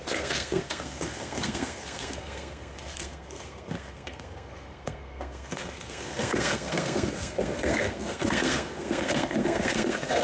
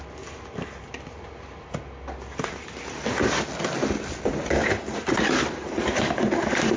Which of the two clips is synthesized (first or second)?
first